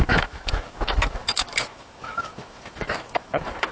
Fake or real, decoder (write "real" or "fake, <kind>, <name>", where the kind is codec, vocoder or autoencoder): fake, autoencoder, DAC-VAE